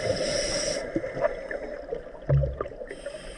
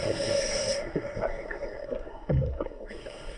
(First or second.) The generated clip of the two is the second